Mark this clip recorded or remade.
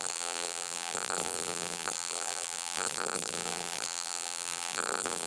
remade